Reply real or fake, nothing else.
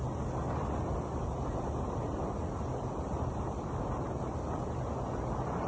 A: real